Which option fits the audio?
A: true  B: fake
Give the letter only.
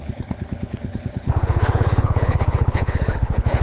B